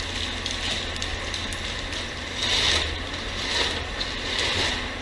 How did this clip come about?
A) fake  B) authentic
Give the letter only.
B